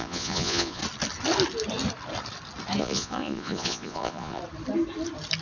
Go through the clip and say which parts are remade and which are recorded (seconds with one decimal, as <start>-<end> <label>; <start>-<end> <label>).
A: 0.0-0.8 remade; 0.8-2.8 recorded; 2.8-4.4 remade; 4.4-5.4 recorded